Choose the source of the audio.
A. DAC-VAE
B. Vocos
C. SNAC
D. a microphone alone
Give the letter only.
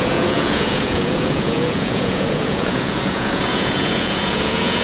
B